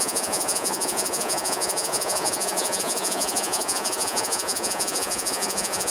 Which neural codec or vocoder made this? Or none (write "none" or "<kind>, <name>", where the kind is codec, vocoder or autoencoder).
vocoder, Vocos